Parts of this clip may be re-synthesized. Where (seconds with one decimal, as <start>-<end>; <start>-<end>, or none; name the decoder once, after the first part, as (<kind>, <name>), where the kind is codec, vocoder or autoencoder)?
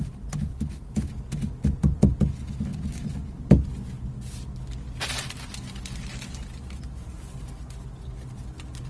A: none